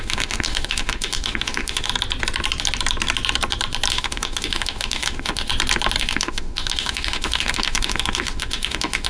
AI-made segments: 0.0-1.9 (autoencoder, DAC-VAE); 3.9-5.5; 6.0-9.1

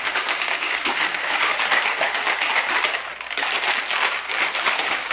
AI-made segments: 0.0-1.5 (codec, DAC); 4.6-5.1

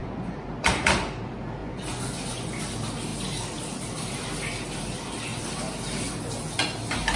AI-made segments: 0.0-0.5 (vocoder, Vocos); 1.6-2.6

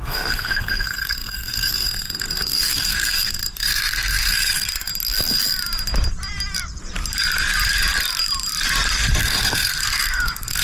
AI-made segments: 0.0-4.9 (codec, SNAC); 9.2-10.6

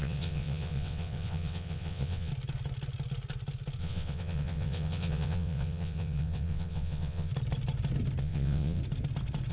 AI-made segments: 0.0-2.3 (vocoder, WaveNeXt); 3.8-7.3; 8.2-8.8

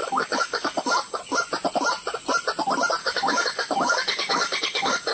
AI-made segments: 0.0-1.2 (codec, DAC); 3.0-5.1

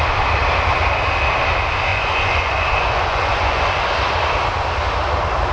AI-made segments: 1.9-3.8 (vocoder, Vocos)

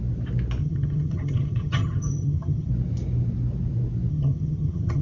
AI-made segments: 0.6-2.7 (vocoder, HiFi-GAN); 4.1-5.0